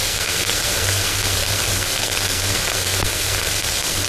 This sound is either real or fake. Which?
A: fake